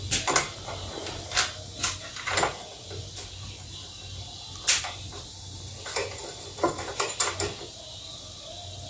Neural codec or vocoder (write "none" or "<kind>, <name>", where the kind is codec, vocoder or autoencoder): none